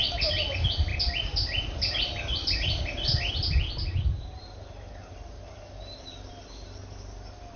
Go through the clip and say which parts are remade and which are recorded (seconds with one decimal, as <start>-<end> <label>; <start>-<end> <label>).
0.0-7.6 recorded